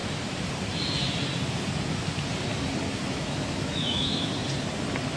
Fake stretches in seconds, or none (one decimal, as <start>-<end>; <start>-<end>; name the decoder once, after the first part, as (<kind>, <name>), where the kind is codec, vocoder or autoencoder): 3.1-4.3 (autoencoder, DAC-VAE)